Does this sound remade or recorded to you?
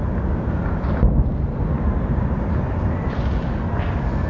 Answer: recorded